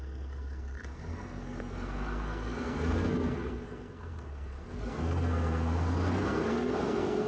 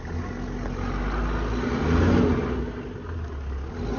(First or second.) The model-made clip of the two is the first